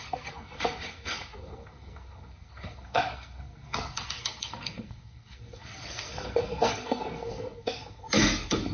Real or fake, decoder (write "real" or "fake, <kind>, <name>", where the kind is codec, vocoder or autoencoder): fake, codec, SNAC